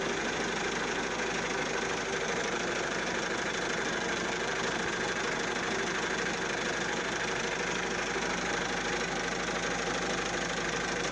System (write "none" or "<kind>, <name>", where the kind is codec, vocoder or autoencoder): none